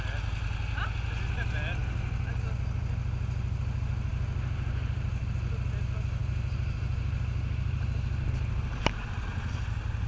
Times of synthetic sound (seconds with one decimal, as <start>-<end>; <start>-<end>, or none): 4.1-5.2; 6.2-9.1

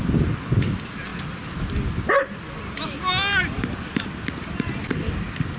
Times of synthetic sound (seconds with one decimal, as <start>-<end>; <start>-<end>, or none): 0.0-1.1; 4.5-5.6

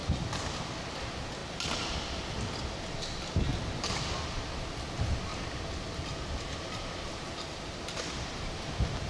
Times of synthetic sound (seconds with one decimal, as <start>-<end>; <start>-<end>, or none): 5.3-7.1

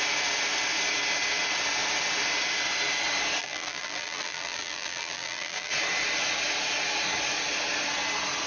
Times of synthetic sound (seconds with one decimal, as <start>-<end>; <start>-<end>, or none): 3.4-5.7

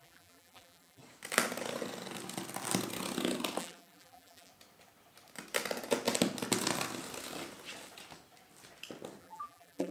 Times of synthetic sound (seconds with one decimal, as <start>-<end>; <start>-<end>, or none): 0.0-1.0; 3.6-4.5; 9.2-9.9

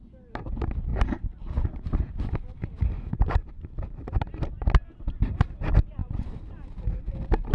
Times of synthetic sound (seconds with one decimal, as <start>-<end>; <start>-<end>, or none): 0.9-3.5; 6.0-7.0